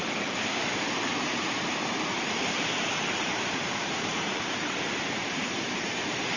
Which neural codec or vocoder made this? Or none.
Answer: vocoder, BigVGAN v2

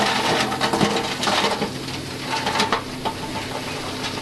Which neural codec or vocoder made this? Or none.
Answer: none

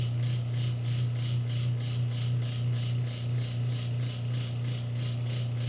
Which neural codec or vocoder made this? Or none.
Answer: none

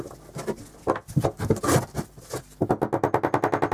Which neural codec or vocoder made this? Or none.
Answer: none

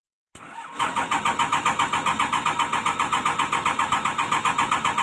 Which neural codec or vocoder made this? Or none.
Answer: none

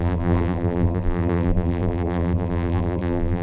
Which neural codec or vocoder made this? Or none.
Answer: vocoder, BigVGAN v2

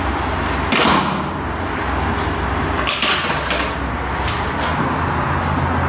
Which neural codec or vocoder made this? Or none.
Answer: none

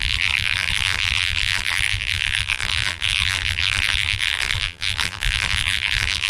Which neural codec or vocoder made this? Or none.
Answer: vocoder, BigVGAN v2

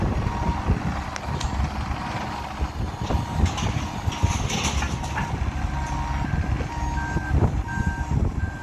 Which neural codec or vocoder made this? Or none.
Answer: none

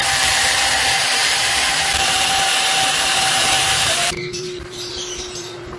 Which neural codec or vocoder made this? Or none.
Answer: vocoder, BigVGAN v2